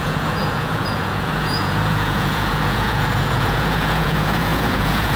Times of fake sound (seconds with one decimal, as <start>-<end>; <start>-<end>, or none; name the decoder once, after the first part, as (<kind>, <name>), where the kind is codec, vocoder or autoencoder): 0.0-5.2 (vocoder, Vocos)